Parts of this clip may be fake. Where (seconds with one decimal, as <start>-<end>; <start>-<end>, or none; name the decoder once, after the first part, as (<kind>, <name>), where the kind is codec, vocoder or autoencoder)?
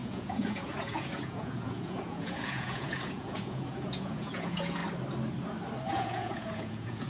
0.0-4.8 (vocoder, Vocos); 5.9-7.1